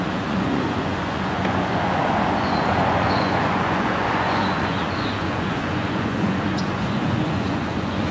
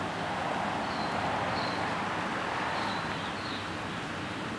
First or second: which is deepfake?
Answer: first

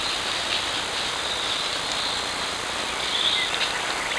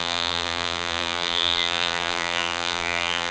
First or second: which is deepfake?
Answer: second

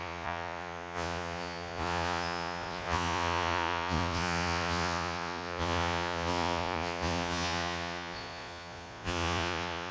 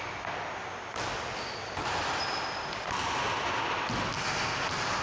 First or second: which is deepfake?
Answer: first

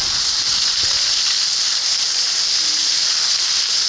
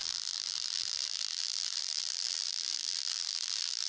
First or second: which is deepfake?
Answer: second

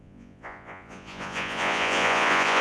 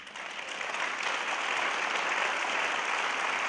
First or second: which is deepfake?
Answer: first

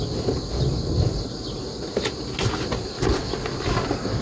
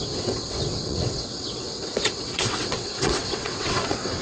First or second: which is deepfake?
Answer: second